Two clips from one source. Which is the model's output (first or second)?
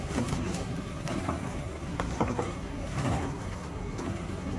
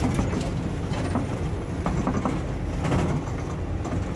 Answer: first